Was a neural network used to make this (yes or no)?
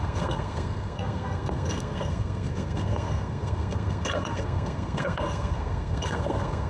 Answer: yes